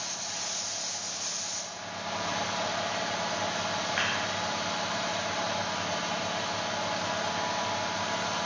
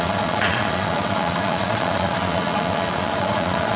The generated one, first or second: second